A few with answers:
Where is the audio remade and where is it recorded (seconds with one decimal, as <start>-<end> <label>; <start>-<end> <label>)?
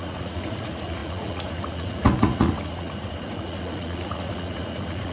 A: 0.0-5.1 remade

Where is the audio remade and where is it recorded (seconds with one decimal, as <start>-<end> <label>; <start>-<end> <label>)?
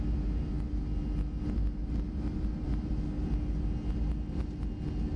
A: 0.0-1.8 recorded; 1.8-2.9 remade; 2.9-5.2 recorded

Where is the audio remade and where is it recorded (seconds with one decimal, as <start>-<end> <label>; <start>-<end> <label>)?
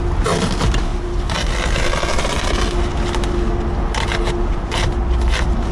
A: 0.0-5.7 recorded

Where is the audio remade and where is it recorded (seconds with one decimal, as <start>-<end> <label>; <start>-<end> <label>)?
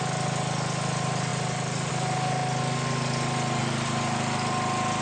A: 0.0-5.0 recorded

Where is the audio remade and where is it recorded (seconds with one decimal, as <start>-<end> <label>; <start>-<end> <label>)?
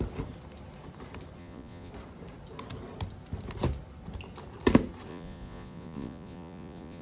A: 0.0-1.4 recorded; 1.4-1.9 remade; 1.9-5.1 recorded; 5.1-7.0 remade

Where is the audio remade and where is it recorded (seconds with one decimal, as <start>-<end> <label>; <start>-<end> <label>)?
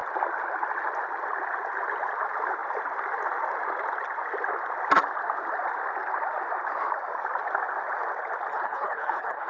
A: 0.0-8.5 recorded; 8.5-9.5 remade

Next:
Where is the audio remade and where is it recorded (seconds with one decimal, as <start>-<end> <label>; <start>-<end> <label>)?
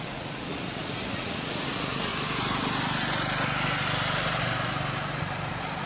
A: 0.0-2.1 remade; 2.1-5.8 recorded